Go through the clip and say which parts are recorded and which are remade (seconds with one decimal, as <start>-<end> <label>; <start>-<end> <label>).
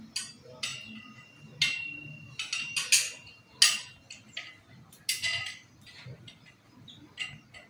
0.0-7.7 recorded